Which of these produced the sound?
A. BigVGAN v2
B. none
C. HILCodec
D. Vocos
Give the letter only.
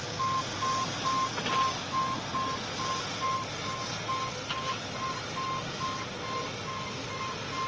B